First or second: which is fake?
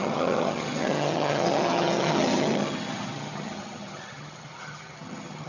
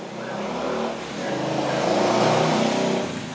first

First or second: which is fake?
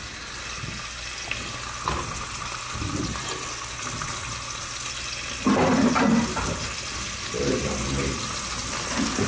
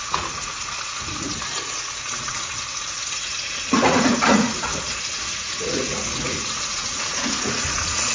second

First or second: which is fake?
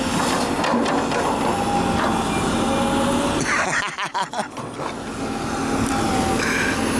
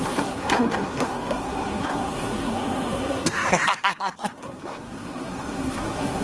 second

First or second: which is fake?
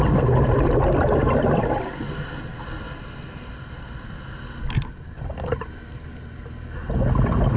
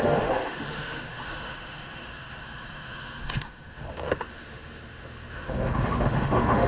second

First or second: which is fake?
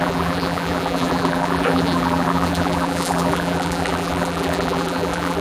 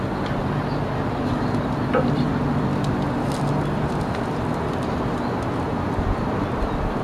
first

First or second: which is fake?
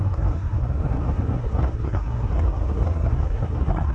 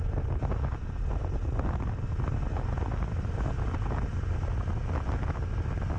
first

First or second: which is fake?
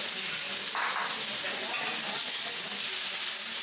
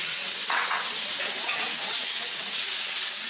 second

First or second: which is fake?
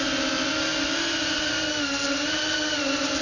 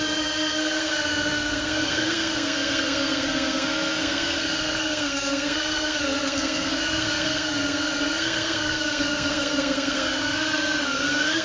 second